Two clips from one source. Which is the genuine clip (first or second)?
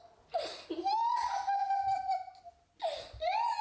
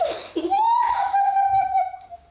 first